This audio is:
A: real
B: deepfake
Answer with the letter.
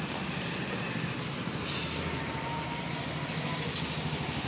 A